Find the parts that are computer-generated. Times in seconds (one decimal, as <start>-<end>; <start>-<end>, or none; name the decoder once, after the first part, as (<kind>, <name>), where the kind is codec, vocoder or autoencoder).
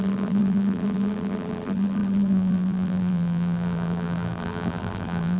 0.0-5.4 (vocoder, BigVGAN v2)